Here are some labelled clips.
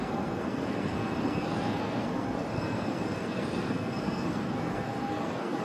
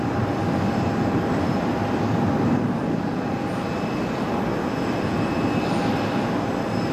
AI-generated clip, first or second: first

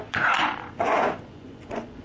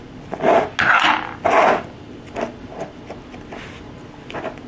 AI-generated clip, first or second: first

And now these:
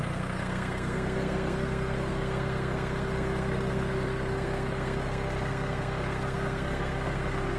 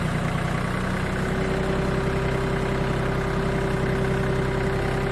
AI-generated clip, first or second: first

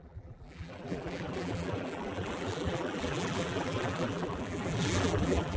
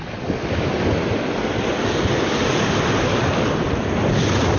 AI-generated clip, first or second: first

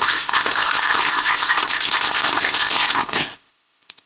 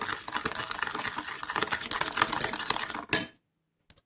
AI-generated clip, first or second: first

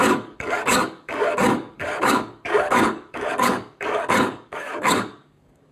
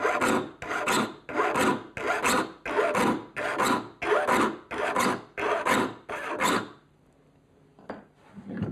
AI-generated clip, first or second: first